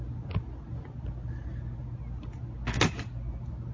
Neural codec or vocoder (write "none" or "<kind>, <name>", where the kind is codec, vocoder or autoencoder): none